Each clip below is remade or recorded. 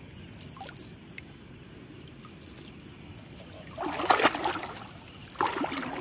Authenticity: recorded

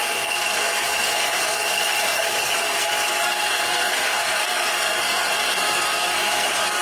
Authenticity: remade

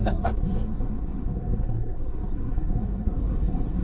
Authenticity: remade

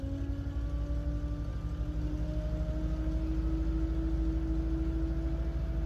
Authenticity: recorded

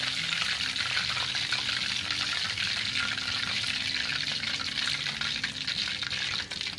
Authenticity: recorded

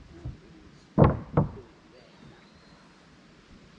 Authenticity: recorded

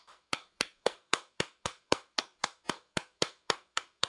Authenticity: remade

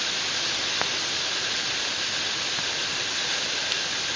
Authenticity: recorded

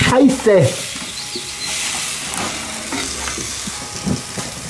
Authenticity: recorded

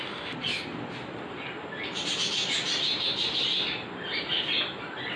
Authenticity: recorded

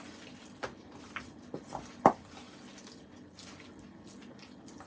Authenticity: recorded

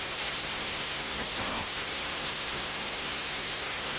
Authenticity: remade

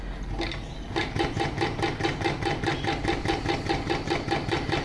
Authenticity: recorded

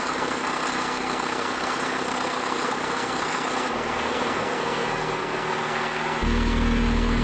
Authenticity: remade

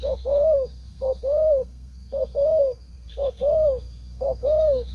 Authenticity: remade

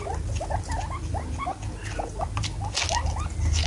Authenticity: recorded